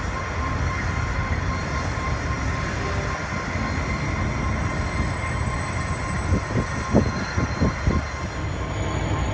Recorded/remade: recorded